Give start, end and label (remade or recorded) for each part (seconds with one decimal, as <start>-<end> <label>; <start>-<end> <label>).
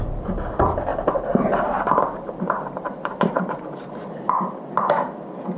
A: 0.0-0.9 recorded; 0.9-4.3 remade; 4.3-5.6 recorded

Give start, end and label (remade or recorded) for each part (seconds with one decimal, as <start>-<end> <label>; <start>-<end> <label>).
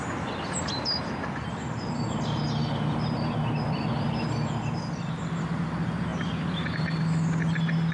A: 0.0-1.0 remade; 1.0-2.6 recorded; 2.6-3.3 remade; 3.3-7.9 recorded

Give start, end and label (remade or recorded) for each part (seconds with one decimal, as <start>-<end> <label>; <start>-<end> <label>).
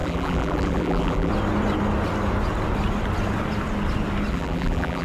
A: 0.0-1.3 remade; 1.3-4.3 recorded; 4.3-5.0 remade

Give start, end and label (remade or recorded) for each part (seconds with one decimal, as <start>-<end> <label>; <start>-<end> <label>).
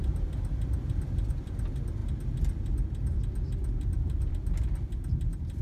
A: 0.0-5.6 recorded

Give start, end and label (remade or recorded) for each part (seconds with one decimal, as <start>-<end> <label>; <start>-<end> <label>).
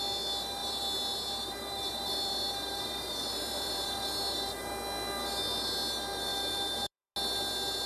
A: 0.0-0.6 recorded; 0.6-4.7 remade; 4.7-6.3 recorded; 6.3-6.9 remade; 6.9-7.9 recorded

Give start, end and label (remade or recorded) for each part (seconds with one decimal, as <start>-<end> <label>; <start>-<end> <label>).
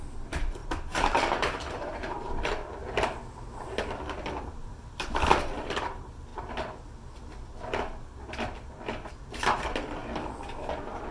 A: 0.0-2.8 remade; 2.8-5.3 recorded; 5.3-6.3 remade; 6.3-9.1 recorded; 9.1-10.0 remade; 10.0-11.1 recorded